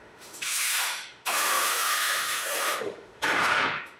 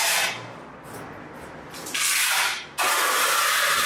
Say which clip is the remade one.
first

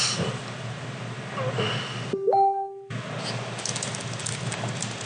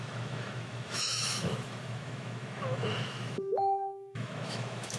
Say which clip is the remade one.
second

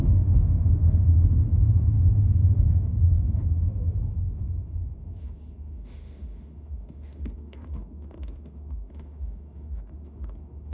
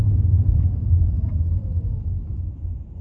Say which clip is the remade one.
first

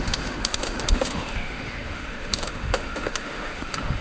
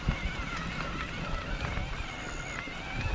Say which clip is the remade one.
first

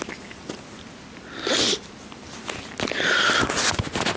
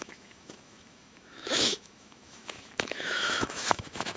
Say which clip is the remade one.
second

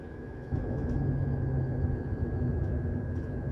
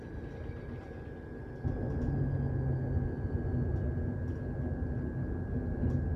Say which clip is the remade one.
first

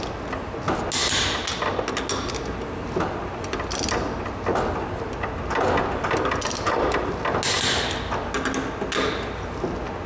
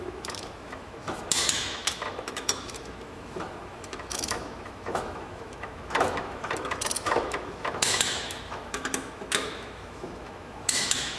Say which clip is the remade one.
second